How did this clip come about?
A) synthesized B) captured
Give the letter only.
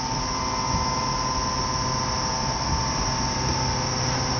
B